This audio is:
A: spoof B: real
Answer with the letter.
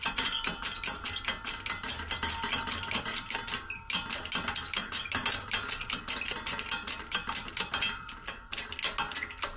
B